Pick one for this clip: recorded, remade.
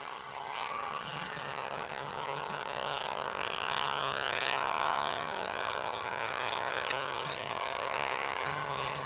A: remade